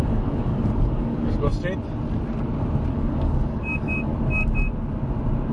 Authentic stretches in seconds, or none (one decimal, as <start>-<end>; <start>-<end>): 1.5-2.9; 4.1-5.5